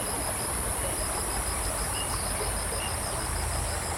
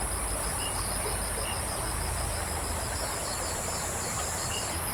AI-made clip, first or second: first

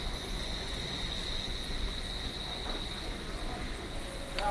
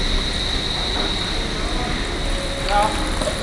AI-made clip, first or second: first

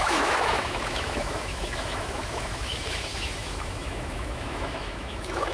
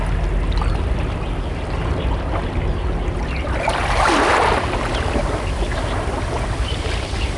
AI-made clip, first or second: first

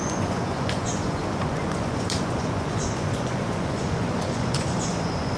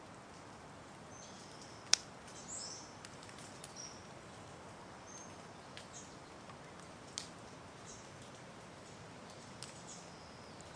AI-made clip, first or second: first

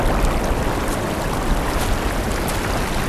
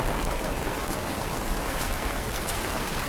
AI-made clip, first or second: second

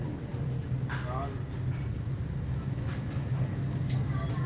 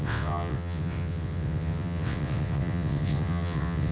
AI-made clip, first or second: second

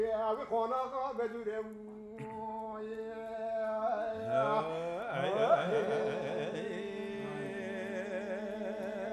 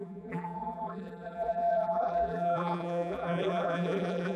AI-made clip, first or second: second